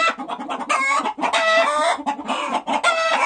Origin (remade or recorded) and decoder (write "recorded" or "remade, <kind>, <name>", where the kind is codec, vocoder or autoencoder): recorded